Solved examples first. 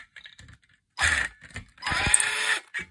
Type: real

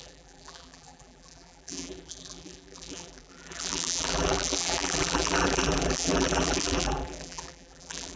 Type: fake